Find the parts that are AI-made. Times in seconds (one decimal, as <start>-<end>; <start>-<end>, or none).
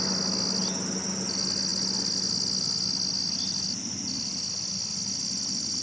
none